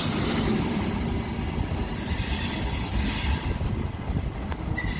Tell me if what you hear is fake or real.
real